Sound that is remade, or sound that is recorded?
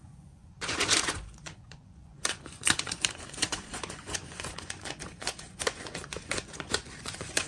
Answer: remade